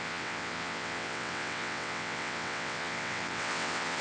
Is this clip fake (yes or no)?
yes